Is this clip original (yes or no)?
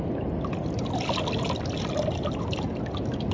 yes